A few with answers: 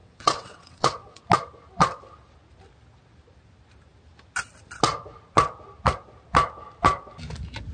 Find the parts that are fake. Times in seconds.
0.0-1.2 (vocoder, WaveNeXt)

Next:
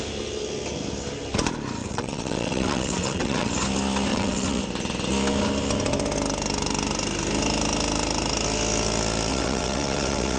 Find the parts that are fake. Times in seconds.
1.8-3.5 (vocoder, WaveNeXt); 4.1-4.6; 9.3-10.4

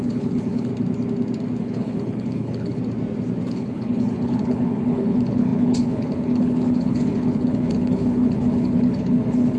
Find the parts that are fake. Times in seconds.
0.0-0.7 (codec, HILCodec); 1.6-2.8; 3.5-9.6

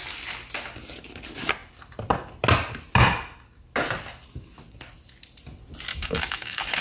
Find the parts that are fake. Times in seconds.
5.9-6.8 (autoencoder, DAC-VAE)